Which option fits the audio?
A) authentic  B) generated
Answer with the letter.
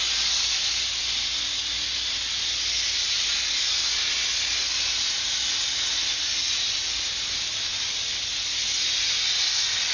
A